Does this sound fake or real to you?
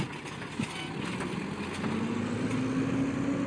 real